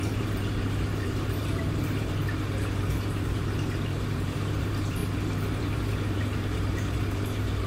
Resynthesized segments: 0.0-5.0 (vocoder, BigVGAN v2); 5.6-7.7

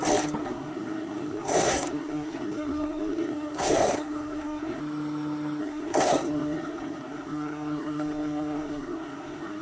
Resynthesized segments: 0.4-4.8 (codec, SNAC); 5.6-9.6

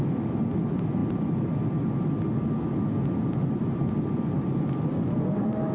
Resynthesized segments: none

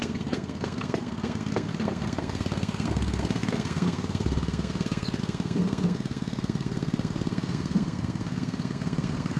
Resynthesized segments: 0.0-9.4 (codec, SNAC)

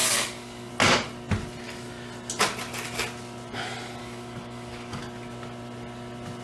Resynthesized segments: 0.0-0.7 (codec, DAC); 4.0-5.0

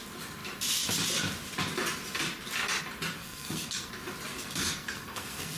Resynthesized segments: 3.2-3.9 (codec, SNAC); 4.3-5.6

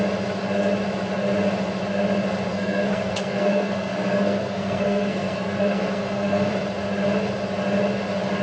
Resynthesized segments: 2.5-6.5 (codec, SNAC)